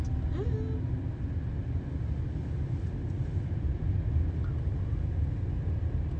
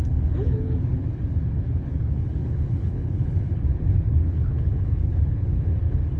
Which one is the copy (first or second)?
second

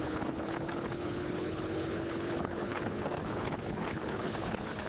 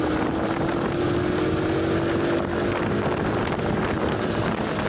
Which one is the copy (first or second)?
first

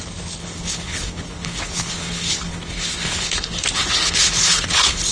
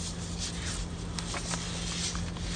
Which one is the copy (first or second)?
first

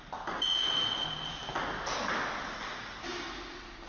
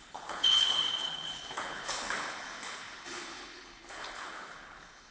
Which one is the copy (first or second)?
second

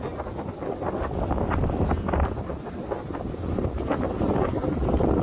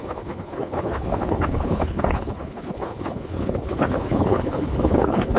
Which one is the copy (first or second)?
second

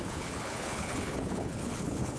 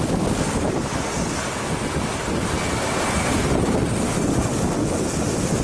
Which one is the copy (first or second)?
first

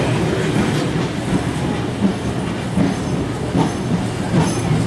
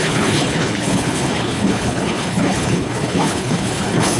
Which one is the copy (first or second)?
second